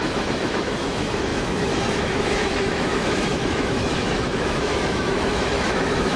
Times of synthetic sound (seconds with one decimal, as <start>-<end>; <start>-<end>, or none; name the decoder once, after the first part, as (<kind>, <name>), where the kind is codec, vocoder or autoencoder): 0.0-6.2 (autoencoder, DAC-VAE)